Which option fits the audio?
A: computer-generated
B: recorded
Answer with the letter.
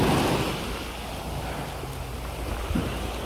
B